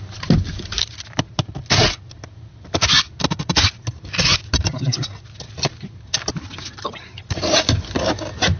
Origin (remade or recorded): recorded